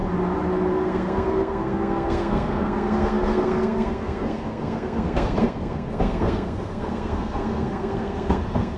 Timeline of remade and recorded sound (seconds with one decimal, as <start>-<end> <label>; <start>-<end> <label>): 0.0-0.7 recorded; 0.7-8.8 remade